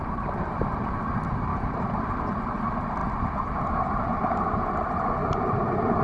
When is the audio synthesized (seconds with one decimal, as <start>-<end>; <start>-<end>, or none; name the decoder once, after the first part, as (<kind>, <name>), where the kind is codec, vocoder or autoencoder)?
1.5-2.2 (vocoder, BigVGAN v2); 5.2-6.0